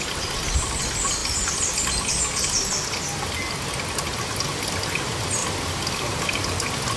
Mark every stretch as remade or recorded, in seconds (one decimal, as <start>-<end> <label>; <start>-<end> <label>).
0.0-7.0 recorded